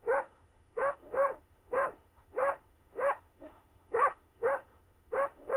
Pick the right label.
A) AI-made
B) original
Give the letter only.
A